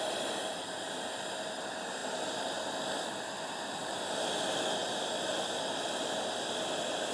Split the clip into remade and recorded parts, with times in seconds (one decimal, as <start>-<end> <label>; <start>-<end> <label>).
0.0-7.1 recorded